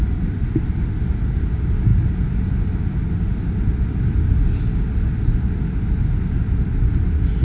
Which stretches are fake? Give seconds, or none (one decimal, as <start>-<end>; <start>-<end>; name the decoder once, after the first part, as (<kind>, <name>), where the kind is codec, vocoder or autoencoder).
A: none